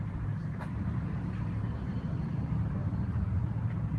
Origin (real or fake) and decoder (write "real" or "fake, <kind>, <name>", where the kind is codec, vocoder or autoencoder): fake, vocoder, BigVGAN v2